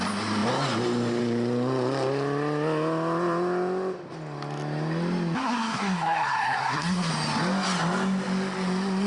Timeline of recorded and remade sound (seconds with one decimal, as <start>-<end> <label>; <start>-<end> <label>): 0.0-5.4 recorded; 5.4-7.1 remade; 7.1-9.1 recorded